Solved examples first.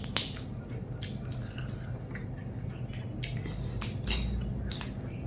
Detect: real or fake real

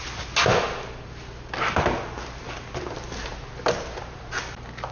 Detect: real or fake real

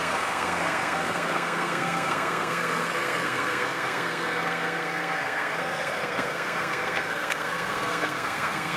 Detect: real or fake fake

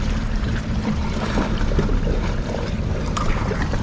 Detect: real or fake fake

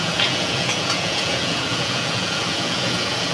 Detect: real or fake fake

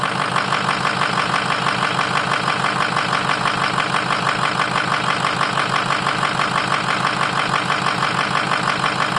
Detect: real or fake real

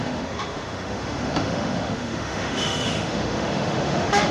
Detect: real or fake fake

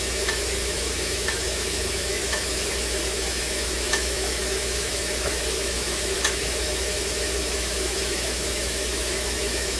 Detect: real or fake fake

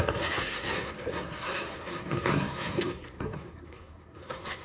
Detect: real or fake fake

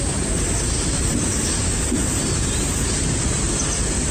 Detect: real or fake fake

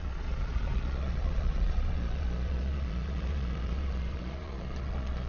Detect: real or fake fake